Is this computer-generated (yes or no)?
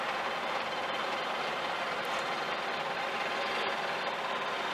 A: no